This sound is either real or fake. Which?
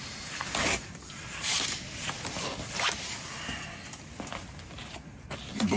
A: real